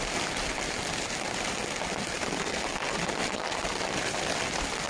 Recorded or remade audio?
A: recorded